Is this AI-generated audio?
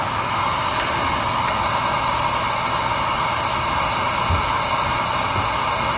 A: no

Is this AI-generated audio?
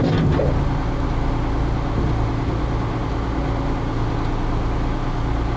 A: no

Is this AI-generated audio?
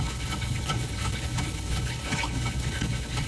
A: yes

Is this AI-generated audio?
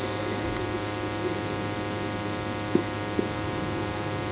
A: no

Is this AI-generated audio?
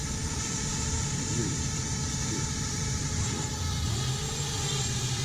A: yes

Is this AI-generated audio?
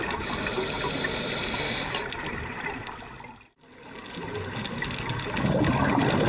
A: no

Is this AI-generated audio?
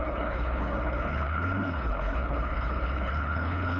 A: yes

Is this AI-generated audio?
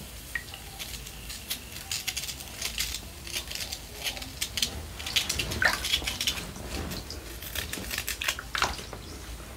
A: no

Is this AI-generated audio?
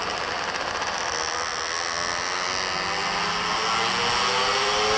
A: no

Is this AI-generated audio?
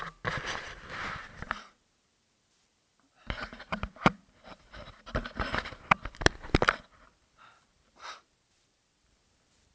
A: yes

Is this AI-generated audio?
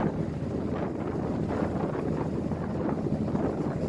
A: no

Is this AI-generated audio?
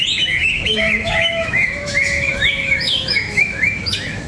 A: yes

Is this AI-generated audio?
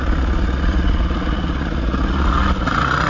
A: yes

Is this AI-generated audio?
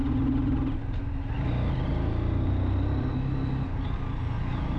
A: no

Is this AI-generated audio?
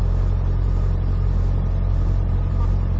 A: yes